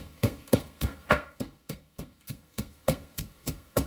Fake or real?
fake